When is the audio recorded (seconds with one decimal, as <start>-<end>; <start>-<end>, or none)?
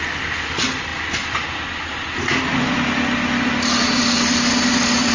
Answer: 0.0-5.1